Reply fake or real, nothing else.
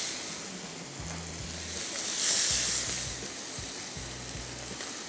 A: real